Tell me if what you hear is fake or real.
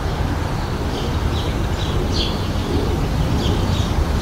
real